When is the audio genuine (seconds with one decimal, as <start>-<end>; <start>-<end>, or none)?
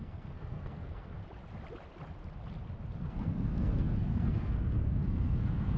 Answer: 1.2-3.0